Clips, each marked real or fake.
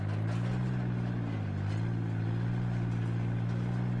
real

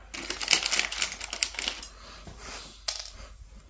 real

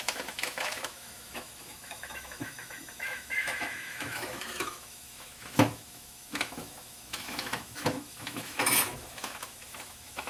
fake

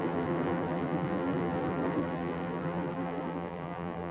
fake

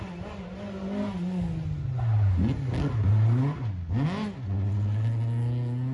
real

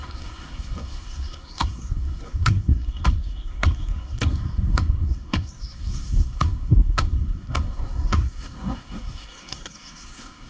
fake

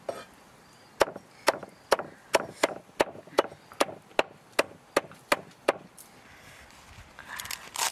real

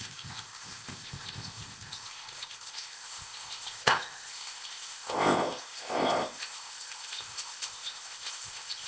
fake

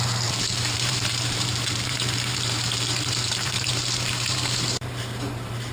fake